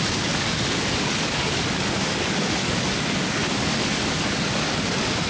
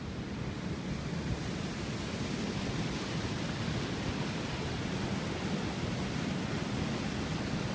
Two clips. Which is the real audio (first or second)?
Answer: second